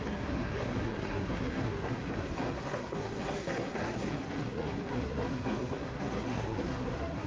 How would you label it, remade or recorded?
remade